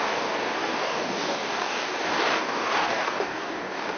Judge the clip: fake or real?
fake